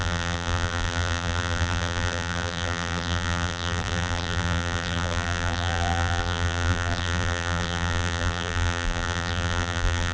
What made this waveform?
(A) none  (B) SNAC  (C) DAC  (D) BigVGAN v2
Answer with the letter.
D